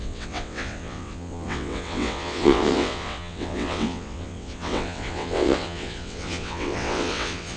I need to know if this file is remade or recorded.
remade